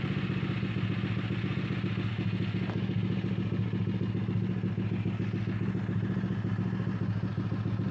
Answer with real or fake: real